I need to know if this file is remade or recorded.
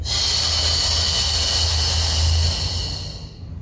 recorded